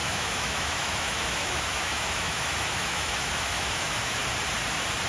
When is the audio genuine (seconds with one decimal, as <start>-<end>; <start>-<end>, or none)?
4.2-5.1